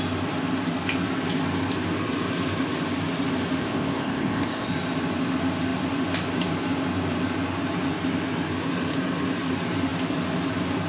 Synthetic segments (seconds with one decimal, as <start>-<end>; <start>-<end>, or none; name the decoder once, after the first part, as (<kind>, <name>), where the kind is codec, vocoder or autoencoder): 3.6-4.7 (codec, ZipCodec)